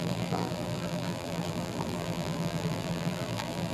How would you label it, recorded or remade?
remade